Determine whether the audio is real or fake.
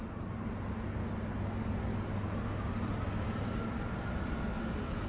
real